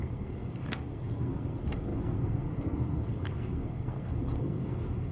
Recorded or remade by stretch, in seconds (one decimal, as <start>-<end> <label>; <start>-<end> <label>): 0.0-5.1 remade